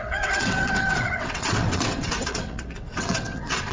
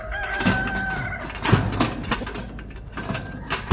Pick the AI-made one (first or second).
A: first